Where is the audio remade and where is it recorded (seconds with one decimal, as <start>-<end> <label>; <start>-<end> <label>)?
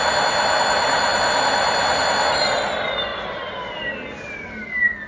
0.0-5.1 recorded